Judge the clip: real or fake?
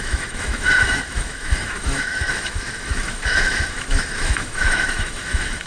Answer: fake